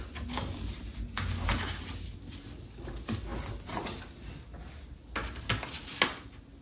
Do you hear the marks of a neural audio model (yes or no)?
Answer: no